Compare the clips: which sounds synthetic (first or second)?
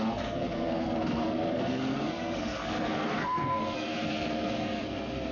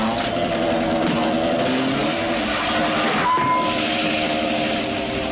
first